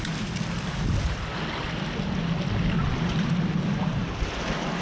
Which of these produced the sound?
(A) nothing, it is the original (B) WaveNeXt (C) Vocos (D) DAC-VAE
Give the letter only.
A